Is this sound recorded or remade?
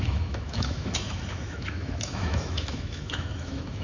remade